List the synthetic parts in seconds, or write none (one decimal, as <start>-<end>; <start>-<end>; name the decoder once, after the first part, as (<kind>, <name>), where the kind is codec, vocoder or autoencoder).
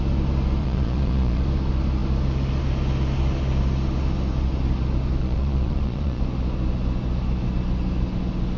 0.6-1.4 (vocoder, Vocos); 5.2-6.2